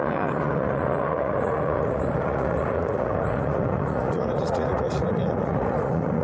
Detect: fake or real fake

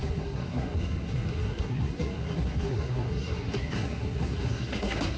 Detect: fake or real fake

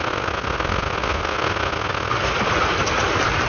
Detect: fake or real real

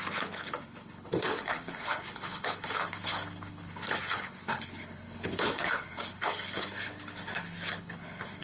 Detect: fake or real fake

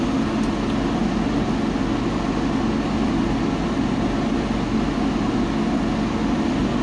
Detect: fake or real real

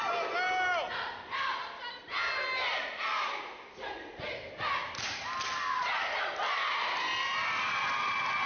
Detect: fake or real real